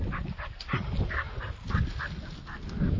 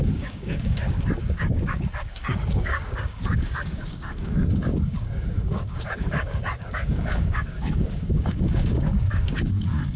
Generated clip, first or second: second